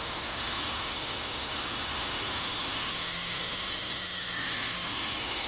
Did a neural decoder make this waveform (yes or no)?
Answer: yes